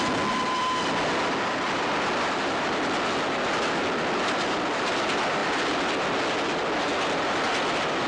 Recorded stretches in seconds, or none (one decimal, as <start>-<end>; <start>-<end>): 0.0-8.1